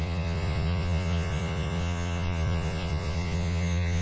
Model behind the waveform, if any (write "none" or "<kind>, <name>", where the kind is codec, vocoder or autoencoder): vocoder, Vocos